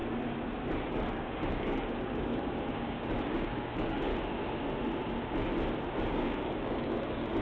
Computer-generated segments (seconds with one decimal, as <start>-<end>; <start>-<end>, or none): 1.1-4.1; 6.1-7.4